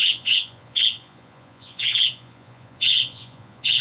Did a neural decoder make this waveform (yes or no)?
yes